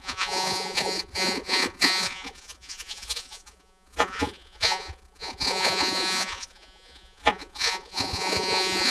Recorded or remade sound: remade